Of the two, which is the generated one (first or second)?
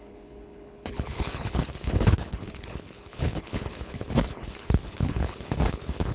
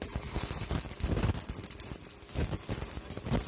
first